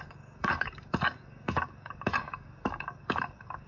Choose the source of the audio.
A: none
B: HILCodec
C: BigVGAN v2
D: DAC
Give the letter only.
D